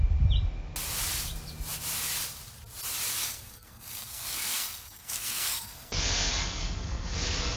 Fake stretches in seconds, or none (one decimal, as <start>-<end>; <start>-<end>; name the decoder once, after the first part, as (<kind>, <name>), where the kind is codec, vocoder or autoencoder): 3.2-7.6 (codec, SNAC)